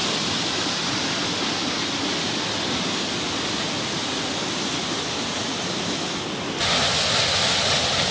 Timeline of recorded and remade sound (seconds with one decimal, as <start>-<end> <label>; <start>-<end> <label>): 0.0-8.1 recorded